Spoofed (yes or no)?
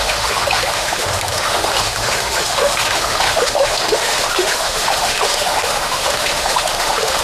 yes